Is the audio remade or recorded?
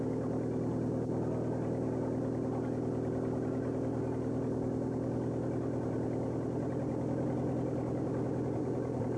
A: recorded